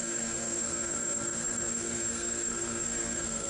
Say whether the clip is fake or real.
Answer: fake